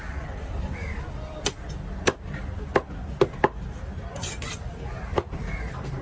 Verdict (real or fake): real